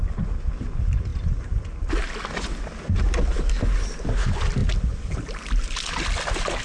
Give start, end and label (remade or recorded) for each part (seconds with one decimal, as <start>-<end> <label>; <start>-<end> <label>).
0.0-6.6 recorded